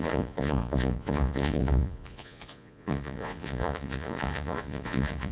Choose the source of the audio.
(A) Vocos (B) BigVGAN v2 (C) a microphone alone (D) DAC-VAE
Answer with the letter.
A